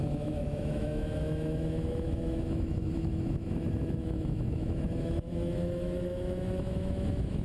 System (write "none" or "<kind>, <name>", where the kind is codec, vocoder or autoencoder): autoencoder, DAC-VAE